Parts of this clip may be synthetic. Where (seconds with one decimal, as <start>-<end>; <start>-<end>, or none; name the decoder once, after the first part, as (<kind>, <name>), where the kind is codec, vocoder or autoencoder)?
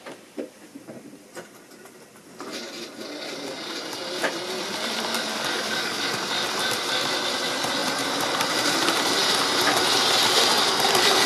5.3-6.0 (codec, DAC)